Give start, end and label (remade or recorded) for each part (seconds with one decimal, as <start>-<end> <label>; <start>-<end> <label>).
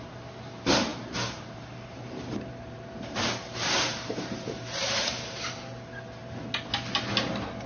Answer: 0.0-0.9 recorded; 0.9-5.5 remade; 5.5-7.7 recorded